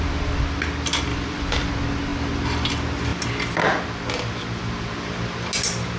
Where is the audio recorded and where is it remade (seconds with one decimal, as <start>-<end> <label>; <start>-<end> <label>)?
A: 0.0-1.1 recorded; 1.1-1.7 remade; 1.7-6.0 recorded